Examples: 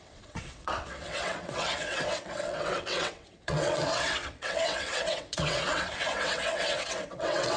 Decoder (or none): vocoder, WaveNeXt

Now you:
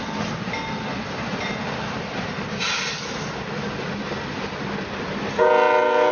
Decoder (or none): none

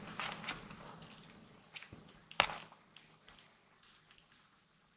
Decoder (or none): none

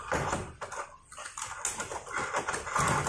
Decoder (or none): none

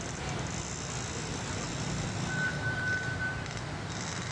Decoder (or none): none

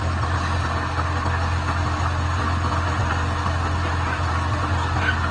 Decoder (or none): none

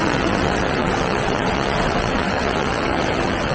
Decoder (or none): vocoder, WaveNeXt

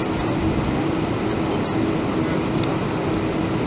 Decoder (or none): none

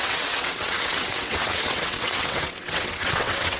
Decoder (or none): vocoder, WaveNeXt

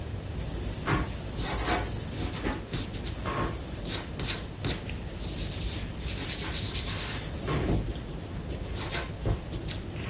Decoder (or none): none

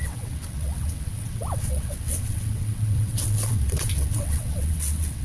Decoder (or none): vocoder, WaveNeXt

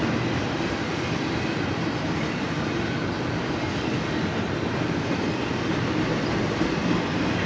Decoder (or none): none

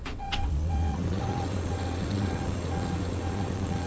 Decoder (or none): vocoder, WaveNeXt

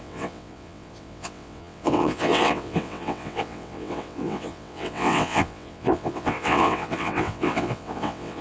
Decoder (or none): vocoder, WaveNeXt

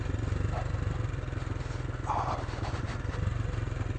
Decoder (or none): none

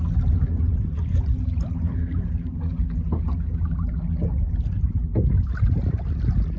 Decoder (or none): none